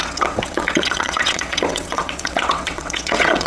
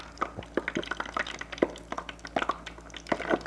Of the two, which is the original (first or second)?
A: second